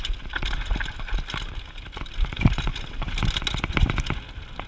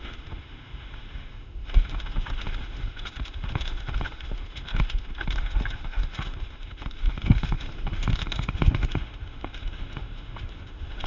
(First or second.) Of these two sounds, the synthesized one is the second